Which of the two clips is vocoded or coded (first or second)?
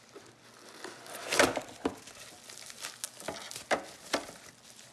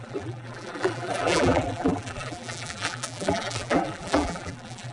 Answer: second